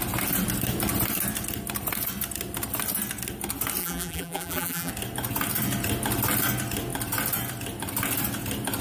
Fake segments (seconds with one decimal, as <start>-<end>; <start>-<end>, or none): 3.8-4.9